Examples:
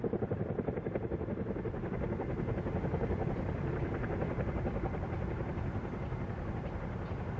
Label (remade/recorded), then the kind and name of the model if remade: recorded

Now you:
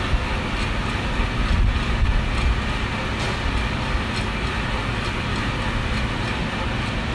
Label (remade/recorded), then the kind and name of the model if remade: recorded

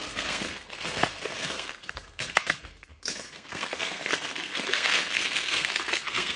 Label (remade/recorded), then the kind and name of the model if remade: remade, codec, SNAC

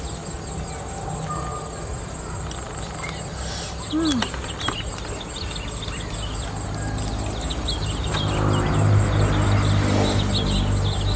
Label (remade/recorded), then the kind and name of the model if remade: recorded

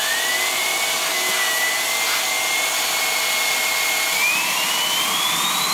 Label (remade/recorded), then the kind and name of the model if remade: recorded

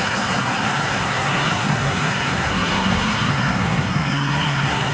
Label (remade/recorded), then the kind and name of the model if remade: remade, codec, SNAC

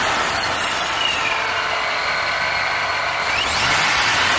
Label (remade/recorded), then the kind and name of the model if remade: recorded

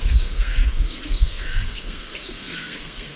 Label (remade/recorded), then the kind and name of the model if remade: remade, codec, SNAC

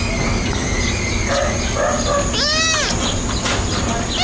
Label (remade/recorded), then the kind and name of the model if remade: recorded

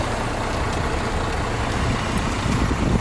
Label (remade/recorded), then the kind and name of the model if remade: recorded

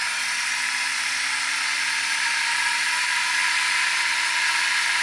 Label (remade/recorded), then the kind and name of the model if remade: recorded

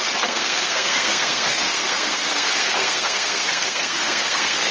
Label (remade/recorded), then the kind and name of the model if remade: remade, codec, SNAC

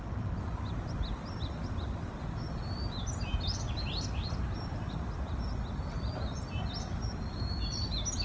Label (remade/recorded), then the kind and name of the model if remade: recorded